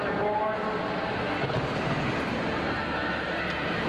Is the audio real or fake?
real